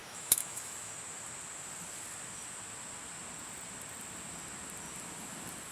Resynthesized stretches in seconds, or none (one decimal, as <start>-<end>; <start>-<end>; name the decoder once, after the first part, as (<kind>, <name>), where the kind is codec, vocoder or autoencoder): 0.0-0.9 (autoencoder, DAC-VAE)